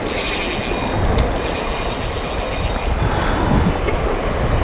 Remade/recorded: recorded